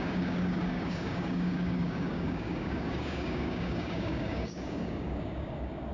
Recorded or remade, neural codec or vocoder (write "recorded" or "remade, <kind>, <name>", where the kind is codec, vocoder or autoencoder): remade, codec, DAC